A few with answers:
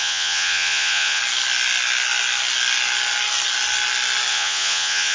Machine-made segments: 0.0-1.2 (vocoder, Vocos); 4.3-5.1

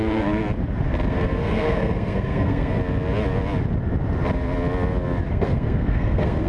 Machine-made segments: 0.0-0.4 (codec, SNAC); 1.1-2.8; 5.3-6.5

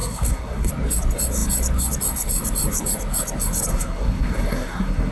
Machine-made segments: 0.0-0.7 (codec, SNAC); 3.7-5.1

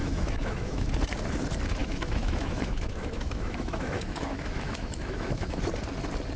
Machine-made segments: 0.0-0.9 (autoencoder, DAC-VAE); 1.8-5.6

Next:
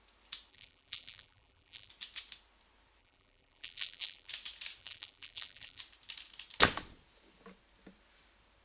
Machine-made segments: 0.5-1.9 (vocoder, BigVGAN v2); 3.0-4.3; 4.8-5.8

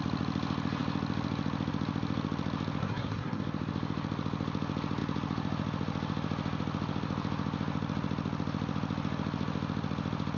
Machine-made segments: 2.8-3.4 (codec, SNAC)

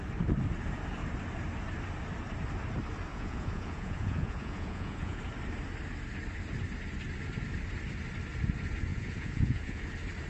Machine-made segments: 3.1-5.2 (vocoder, Vocos); 8.9-9.8

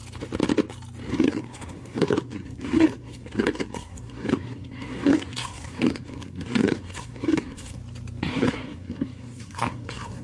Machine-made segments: 1.1-7.8 (codec, SNAC); 8.3-10.2